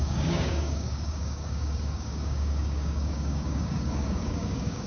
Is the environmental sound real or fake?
fake